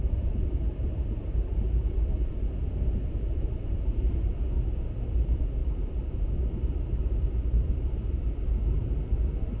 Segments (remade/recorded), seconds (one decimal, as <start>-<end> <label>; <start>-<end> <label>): 0.0-4.3 remade; 4.3-5.6 recorded; 5.6-7.8 remade; 7.8-9.6 recorded